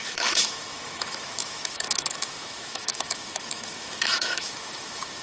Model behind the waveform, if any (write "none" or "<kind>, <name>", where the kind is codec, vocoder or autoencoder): autoencoder, DAC-VAE